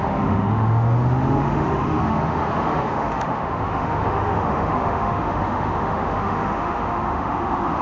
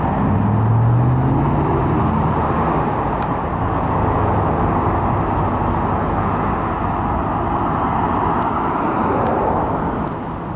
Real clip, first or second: second